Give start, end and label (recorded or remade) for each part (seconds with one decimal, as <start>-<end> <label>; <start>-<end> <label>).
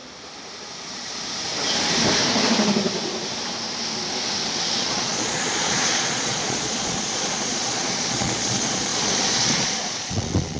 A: 0.0-4.7 recorded; 4.7-10.6 remade